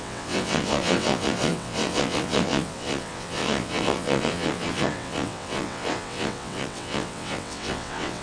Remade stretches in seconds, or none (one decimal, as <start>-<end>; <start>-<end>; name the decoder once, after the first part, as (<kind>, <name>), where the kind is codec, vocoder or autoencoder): 0.0-8.2 (vocoder, WaveNeXt)